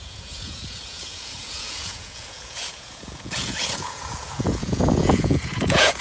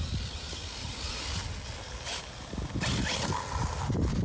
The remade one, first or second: first